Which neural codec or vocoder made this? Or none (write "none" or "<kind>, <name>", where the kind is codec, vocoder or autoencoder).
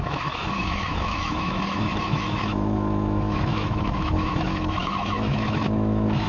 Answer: autoencoder, DAC-VAE